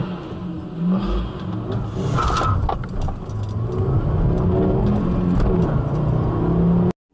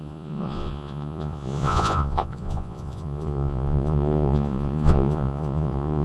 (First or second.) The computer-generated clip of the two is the second